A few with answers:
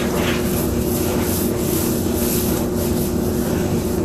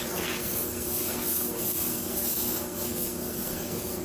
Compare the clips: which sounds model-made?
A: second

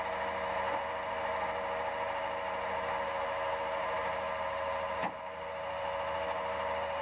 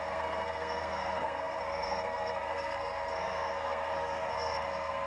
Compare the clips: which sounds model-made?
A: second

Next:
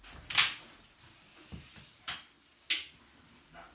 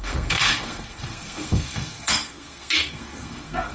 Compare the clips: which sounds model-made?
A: second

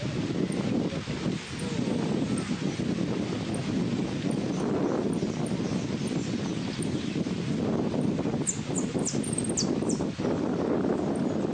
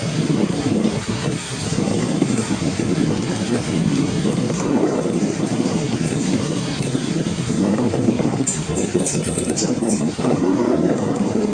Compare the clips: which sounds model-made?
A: second